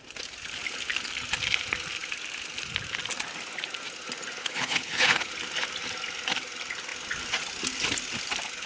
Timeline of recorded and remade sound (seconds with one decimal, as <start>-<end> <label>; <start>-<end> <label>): 0.0-4.4 recorded; 4.4-5.3 remade; 5.3-8.7 recorded